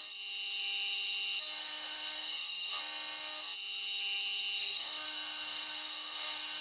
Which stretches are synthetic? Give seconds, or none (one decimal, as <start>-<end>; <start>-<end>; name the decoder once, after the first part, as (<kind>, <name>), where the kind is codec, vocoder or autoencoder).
1.6-2.7 (codec, SNAC); 4.6-6.6